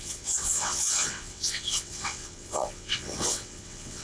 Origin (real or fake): fake